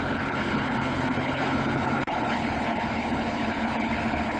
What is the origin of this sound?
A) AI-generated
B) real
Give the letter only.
A